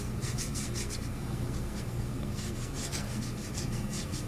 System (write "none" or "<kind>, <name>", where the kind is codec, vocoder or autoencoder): codec, SNAC